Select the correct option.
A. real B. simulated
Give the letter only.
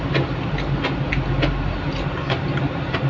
A